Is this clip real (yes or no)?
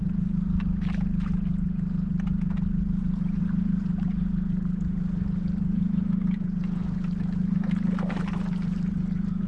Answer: yes